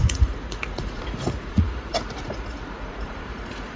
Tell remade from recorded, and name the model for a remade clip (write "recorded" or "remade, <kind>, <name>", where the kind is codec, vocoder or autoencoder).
remade, vocoder, Vocos